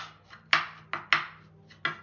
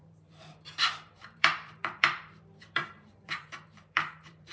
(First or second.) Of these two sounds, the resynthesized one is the second